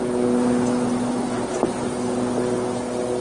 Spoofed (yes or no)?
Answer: no